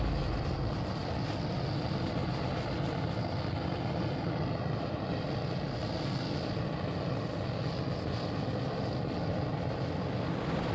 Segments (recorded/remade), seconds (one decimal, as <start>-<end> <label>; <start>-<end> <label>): 0.0-10.7 recorded